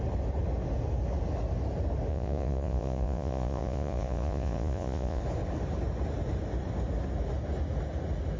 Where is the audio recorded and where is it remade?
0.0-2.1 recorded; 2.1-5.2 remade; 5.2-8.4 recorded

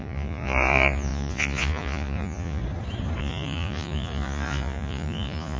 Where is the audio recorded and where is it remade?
0.0-2.6 remade; 2.6-3.2 recorded; 3.2-5.6 remade

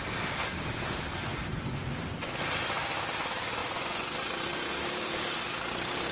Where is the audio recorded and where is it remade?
0.0-1.3 recorded; 1.3-2.3 remade; 2.3-3.6 recorded; 3.6-4.3 remade; 4.3-6.1 recorded